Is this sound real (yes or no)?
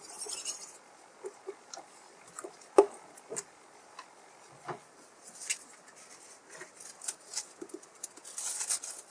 yes